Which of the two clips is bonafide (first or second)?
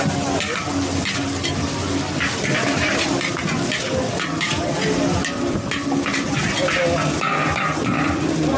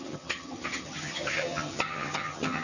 first